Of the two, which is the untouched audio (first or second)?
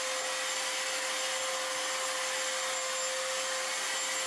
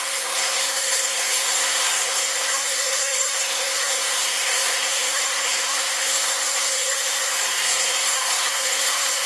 first